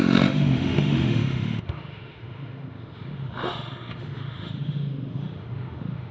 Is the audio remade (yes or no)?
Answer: yes